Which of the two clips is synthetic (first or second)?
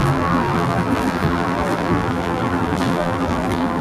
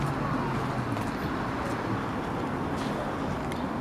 first